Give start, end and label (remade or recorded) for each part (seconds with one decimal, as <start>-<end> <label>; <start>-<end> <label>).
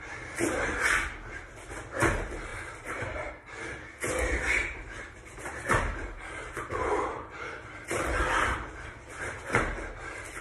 0.0-2.5 recorded; 2.5-3.3 remade; 3.3-4.6 recorded; 4.6-9.6 remade; 9.6-10.4 recorded